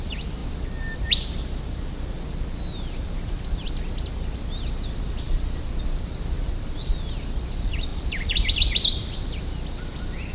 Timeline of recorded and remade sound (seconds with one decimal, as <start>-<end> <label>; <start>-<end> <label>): 0.0-2.7 recorded; 2.7-3.7 remade; 3.7-7.9 recorded; 7.9-9.2 remade; 9.2-10.3 recorded